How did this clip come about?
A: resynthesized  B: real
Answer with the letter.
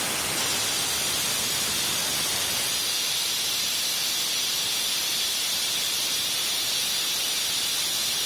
B